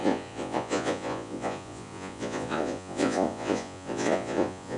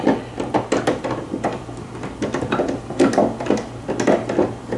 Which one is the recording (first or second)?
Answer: second